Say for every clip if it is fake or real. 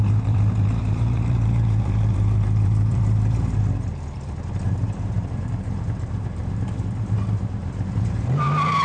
fake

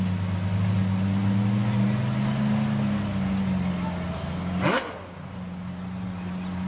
real